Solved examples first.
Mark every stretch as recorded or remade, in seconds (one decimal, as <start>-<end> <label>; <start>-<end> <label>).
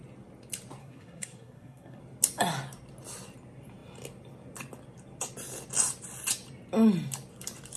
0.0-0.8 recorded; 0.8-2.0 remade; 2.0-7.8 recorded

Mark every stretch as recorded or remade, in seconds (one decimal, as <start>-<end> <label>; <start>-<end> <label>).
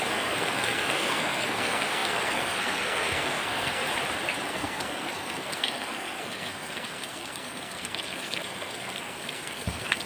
0.0-3.8 remade; 3.8-4.5 recorded; 4.5-10.1 remade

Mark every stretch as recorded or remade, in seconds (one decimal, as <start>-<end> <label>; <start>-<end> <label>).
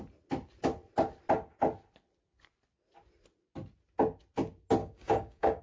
0.0-4.8 recorded; 4.8-5.6 remade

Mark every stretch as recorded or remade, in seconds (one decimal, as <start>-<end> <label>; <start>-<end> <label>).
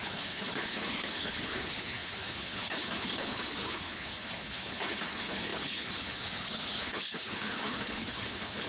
0.0-8.7 remade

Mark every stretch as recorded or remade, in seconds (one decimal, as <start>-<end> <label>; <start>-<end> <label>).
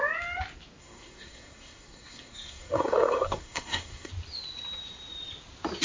0.0-0.8 recorded; 0.8-4.1 remade; 4.1-5.8 recorded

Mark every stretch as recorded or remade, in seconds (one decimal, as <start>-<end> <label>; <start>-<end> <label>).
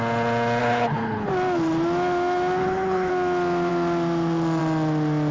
0.0-0.6 recorded; 0.6-1.3 remade; 1.3-2.6 recorded; 2.6-3.1 remade; 3.1-5.3 recorded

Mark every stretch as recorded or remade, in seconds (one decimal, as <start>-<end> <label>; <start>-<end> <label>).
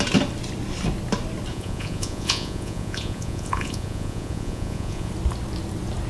0.0-1.5 recorded; 1.5-5.1 remade; 5.1-6.1 recorded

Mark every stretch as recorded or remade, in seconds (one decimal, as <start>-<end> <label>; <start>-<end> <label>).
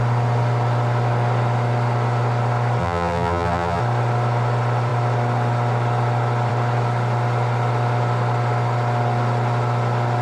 0.0-2.8 recorded; 2.8-3.8 remade; 3.8-10.2 recorded